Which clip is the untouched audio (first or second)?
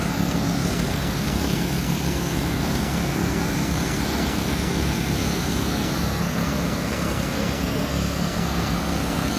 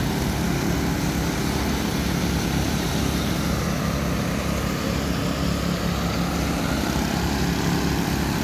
second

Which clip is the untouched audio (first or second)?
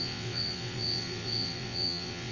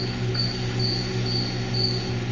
second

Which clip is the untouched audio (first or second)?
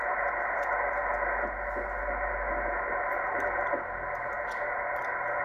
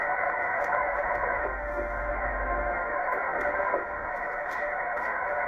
first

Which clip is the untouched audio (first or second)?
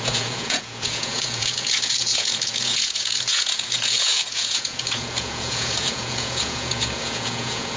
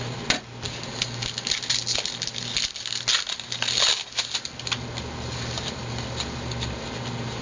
second